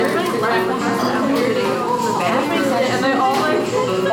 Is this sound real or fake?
real